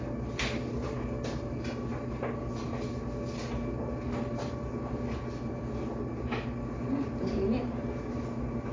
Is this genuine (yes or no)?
yes